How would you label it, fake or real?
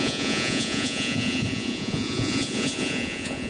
fake